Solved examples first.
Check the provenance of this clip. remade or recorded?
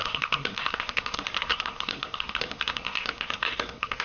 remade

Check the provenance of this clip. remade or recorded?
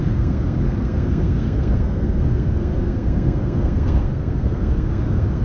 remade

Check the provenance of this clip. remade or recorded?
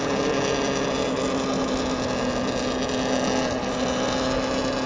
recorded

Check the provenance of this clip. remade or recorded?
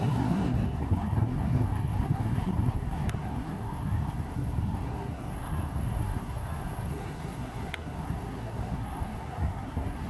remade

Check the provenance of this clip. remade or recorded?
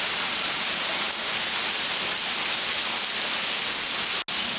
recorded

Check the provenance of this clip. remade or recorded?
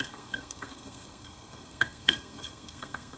remade